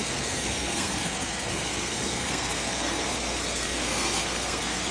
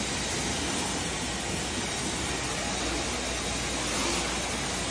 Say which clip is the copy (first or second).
first